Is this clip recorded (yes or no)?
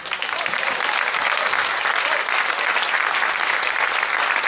yes